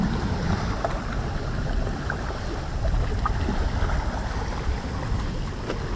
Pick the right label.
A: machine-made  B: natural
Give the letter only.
B